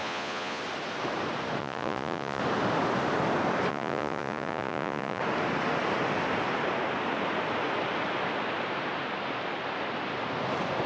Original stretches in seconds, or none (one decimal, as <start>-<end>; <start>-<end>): 0.6-1.6; 2.4-3.7; 5.2-10.9